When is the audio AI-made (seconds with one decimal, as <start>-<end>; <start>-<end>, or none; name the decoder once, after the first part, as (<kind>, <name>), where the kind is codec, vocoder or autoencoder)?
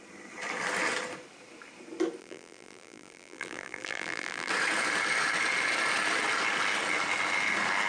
2.2-4.5 (vocoder, BigVGAN v2)